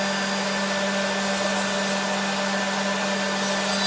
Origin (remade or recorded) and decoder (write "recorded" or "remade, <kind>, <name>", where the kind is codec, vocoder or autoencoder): recorded